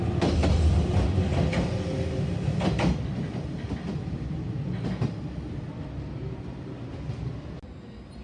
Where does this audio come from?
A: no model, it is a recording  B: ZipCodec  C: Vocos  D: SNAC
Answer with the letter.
A